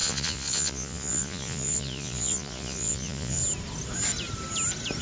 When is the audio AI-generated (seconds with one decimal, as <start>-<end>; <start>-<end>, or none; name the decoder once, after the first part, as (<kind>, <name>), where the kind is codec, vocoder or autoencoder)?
0.0-3.4 (vocoder, Vocos)